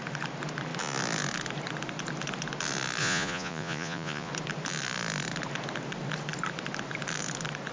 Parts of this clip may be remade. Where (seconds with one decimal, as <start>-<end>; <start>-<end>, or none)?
3.0-4.3